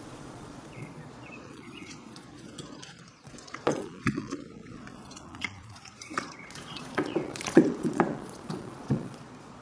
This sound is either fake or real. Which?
fake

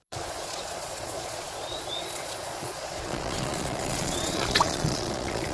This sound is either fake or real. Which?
fake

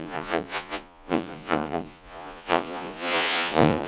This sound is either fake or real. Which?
fake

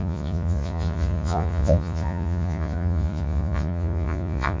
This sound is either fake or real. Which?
fake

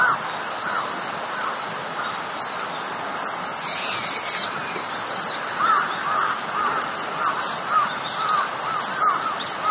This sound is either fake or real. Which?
real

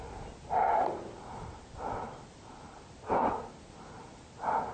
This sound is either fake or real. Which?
real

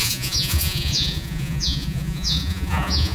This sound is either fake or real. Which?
fake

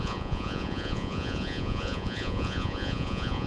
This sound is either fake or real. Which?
fake